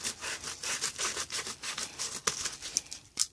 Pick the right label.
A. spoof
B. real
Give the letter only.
B